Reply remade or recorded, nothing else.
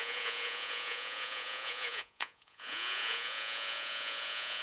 remade